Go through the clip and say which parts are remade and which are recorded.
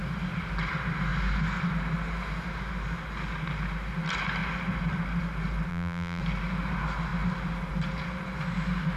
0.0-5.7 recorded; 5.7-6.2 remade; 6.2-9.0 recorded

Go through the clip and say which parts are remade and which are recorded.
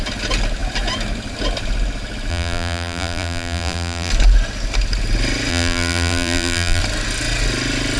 0.0-2.3 recorded; 2.3-4.1 remade; 4.1-5.5 recorded; 5.5-6.8 remade; 6.8-8.0 recorded